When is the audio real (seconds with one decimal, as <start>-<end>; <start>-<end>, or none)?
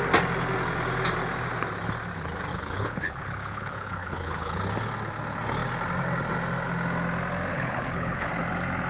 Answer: 0.0-2.5; 4.6-7.5; 8.3-8.9